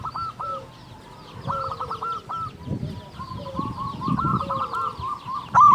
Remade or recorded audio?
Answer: recorded